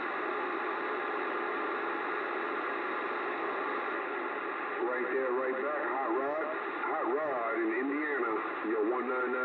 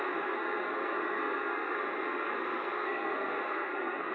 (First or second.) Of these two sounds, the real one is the first